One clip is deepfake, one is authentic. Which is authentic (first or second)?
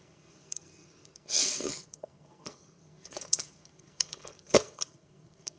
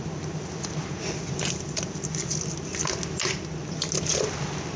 second